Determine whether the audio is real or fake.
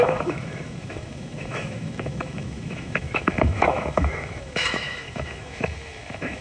fake